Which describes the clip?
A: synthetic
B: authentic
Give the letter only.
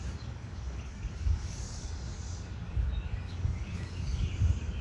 A